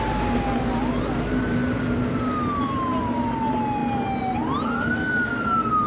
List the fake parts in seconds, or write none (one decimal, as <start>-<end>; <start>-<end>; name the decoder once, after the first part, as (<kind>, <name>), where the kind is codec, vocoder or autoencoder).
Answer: none